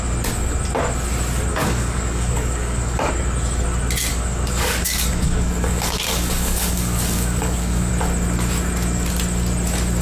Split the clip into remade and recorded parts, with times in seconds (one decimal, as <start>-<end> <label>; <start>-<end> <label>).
0.0-1.5 recorded; 1.5-3.1 remade; 3.1-4.1 recorded; 4.1-7.9 remade; 7.9-10.0 recorded